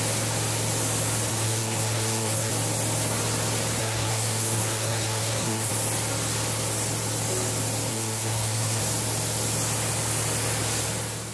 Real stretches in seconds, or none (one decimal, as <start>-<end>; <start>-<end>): 0.0-1.3; 2.5-3.8; 5.7-7.9; 8.8-11.3